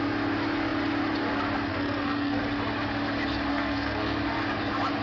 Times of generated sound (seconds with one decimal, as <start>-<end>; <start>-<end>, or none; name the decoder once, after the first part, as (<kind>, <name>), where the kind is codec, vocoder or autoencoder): 1.7-2.4 (codec, SNAC); 3.5-4.2